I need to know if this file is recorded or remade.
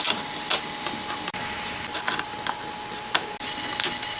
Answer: recorded